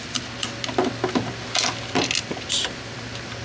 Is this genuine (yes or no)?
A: yes